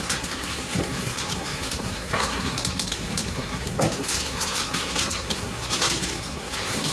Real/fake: fake